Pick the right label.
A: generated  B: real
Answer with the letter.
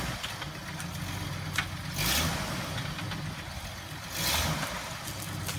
B